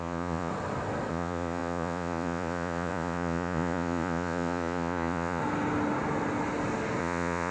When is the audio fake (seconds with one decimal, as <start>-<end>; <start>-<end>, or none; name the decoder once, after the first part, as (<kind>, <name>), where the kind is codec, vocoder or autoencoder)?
0.0-0.5 (vocoder, Vocos); 1.1-5.4; 7.0-7.5